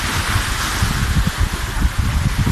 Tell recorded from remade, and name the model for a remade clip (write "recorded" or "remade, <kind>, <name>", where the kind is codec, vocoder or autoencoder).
recorded